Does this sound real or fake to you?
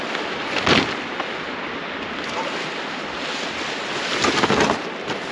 real